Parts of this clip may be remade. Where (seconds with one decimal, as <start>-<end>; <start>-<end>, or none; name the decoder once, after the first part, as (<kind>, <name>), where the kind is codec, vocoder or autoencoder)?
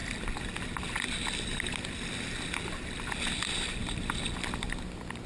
none